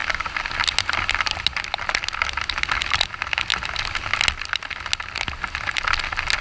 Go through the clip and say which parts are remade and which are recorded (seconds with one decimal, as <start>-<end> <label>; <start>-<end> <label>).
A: 0.0-6.4 recorded